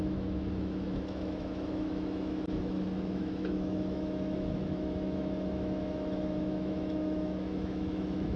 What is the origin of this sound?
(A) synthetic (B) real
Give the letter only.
A